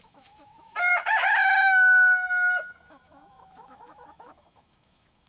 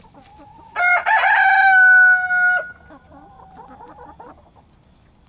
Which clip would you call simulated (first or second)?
first